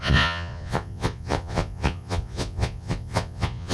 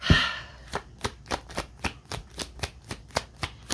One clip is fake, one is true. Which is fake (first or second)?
first